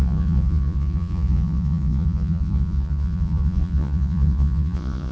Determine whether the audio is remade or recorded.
remade